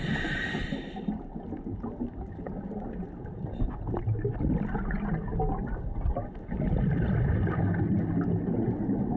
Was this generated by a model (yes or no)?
no